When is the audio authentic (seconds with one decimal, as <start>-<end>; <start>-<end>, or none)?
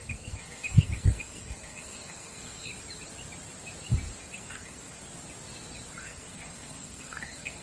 2.7-4.2; 5.0-6.0